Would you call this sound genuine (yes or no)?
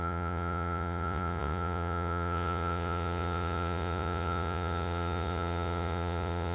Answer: no